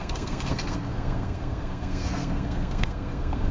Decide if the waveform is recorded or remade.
remade